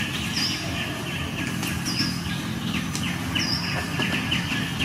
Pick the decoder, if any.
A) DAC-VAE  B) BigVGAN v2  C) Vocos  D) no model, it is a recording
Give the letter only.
D